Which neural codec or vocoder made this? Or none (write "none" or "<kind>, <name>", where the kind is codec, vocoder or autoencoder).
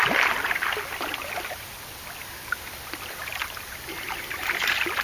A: vocoder, BigVGAN v2